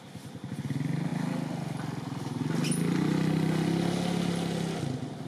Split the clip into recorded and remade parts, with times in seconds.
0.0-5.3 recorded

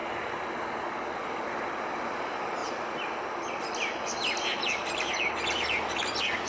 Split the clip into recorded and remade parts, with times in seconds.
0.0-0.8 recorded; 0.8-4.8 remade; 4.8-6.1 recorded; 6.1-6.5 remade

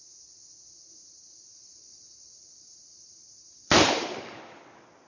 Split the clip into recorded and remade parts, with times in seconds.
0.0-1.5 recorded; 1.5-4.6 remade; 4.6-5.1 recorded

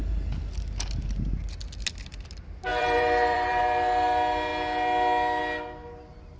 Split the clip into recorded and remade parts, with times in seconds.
0.0-2.7 recorded; 2.7-3.6 remade; 3.6-6.4 recorded

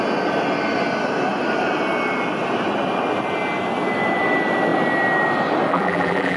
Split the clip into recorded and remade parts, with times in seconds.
0.0-5.7 recorded; 5.7-6.4 remade